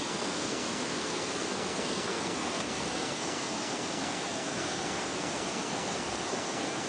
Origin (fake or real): fake